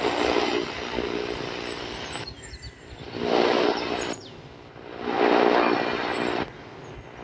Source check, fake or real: real